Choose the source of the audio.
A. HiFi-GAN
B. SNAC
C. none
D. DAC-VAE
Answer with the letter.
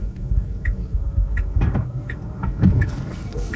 B